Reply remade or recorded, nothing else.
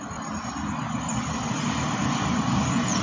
recorded